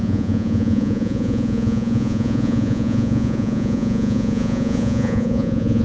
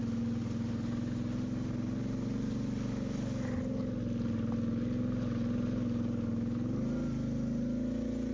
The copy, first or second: first